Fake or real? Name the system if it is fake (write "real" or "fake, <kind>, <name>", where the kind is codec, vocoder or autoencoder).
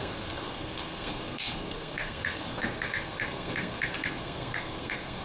fake, codec, SNAC